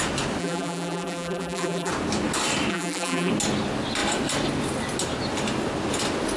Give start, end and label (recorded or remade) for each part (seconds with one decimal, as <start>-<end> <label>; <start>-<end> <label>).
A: 0.0-0.4 recorded; 0.4-1.9 remade; 1.9-2.7 recorded; 2.7-3.3 remade; 3.3-6.4 recorded